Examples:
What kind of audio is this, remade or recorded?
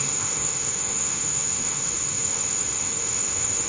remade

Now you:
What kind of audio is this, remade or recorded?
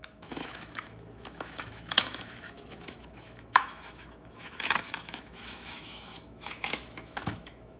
remade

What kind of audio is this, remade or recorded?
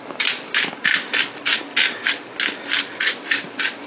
recorded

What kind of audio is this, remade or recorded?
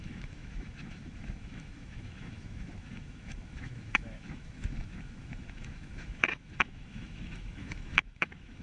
remade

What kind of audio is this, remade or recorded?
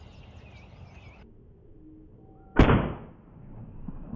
recorded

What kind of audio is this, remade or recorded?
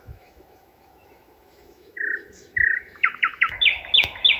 remade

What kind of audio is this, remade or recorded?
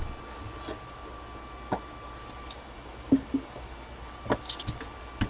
recorded